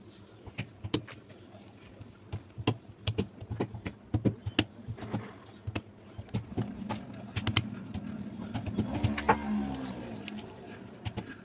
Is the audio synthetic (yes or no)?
no